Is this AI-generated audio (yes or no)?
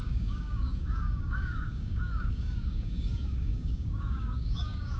yes